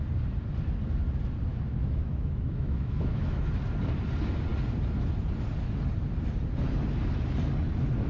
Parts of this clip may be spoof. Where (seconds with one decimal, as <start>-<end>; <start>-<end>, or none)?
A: 1.5-3.5